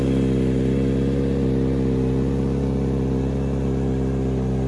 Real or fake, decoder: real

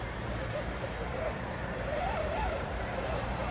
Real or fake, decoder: fake, vocoder, BigVGAN v2